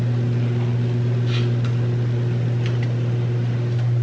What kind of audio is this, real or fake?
real